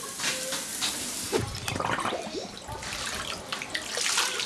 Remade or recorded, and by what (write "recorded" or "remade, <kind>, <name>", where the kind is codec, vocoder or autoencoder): recorded